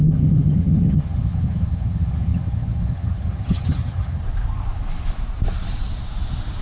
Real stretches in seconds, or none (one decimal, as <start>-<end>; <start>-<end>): 4.2-6.6